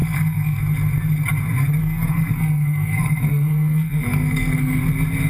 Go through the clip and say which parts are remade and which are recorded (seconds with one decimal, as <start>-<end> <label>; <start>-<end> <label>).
0.0-0.6 remade; 0.6-1.8 recorded; 1.8-4.8 remade; 4.8-5.3 recorded